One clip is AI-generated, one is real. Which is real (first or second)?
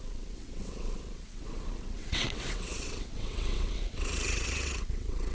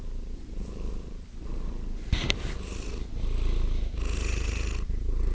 second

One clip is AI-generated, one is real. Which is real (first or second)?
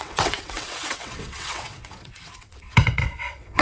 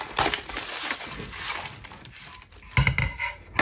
second